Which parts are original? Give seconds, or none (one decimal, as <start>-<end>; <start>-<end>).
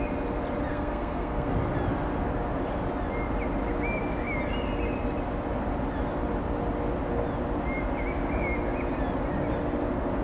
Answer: 0.0-0.7; 1.5-10.2